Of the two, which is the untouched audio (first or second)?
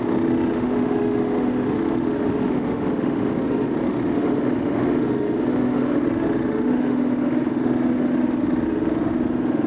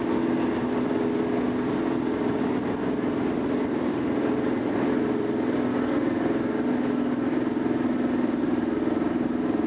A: second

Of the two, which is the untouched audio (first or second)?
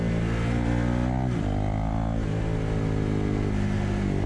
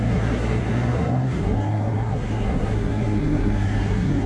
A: first